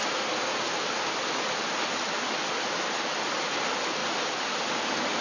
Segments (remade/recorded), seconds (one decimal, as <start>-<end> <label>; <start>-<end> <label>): 0.0-0.5 recorded; 0.5-3.6 remade; 3.6-5.2 recorded